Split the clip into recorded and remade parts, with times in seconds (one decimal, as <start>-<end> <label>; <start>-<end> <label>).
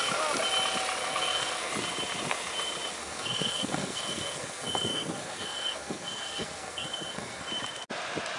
0.0-1.0 recorded; 1.0-1.7 remade; 1.7-3.0 recorded; 3.0-7.5 remade; 7.5-8.4 recorded